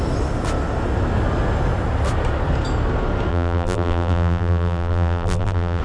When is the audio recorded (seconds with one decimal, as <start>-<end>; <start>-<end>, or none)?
0.0-3.3